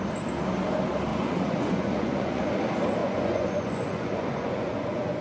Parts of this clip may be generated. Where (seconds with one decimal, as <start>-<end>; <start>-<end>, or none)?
1.1-2.5; 3.0-5.2